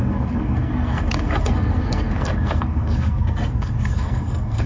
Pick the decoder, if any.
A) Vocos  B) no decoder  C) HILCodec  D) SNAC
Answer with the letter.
D